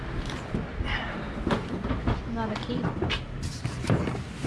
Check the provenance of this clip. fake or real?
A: real